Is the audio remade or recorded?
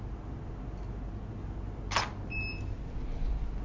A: recorded